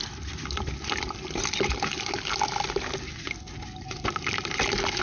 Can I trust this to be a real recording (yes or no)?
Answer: yes